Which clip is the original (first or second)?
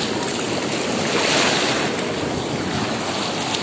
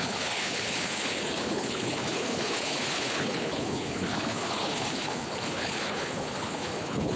first